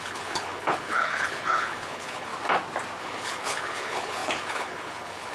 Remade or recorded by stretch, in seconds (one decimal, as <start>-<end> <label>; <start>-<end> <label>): 0.0-2.3 remade; 2.3-3.0 recorded; 3.0-5.3 remade